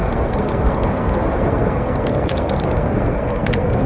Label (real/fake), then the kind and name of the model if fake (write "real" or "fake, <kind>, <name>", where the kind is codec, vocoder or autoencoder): fake, codec, SNAC